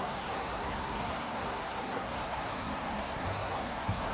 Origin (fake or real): fake